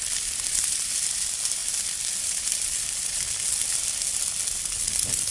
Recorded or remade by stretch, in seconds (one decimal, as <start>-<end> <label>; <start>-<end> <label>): 0.0-5.3 recorded